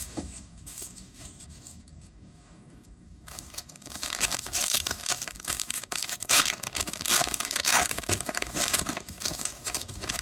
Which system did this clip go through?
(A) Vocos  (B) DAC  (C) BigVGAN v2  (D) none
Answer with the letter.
B